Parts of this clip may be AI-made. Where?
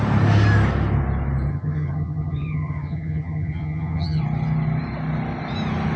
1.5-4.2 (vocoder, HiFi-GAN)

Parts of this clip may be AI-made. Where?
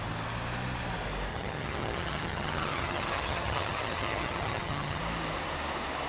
1.3-5.0 (vocoder, HiFi-GAN)